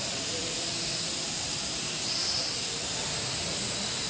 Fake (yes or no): yes